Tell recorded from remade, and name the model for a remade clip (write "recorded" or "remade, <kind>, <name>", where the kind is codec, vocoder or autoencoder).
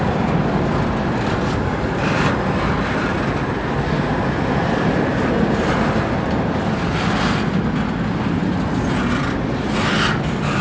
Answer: recorded